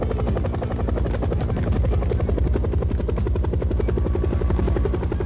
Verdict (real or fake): real